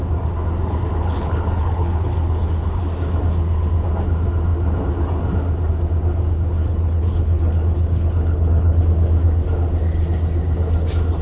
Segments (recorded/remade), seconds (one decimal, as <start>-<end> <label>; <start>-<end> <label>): 0.0-0.9 recorded; 0.9-2.8 remade; 2.8-6.6 recorded; 6.6-8.8 remade; 8.8-11.2 recorded

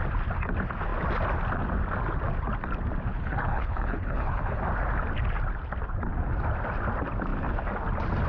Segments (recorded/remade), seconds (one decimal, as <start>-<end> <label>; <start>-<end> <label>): 0.0-3.1 recorded; 3.1-4.6 remade; 4.6-8.3 recorded

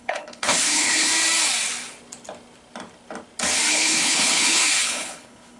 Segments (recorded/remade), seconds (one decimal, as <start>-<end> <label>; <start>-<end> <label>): 0.0-1.1 remade; 1.1-3.7 recorded; 3.7-5.6 remade

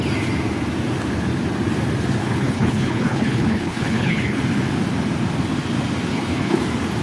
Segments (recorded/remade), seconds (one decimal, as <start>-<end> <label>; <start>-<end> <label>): 0.0-2.2 recorded; 2.2-4.4 remade; 4.4-6.1 recorded; 6.1-6.6 remade; 6.6-7.0 recorded

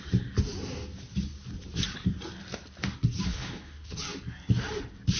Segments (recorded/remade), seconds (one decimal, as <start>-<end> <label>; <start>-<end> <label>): 0.0-3.3 recorded; 3.3-4.0 remade; 4.0-5.2 recorded

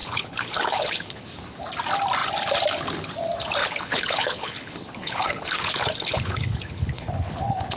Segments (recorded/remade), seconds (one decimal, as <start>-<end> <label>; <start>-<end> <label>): 0.0-1.2 remade; 1.2-3.6 recorded; 3.6-7.8 remade